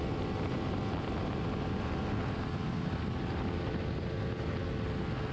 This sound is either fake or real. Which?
real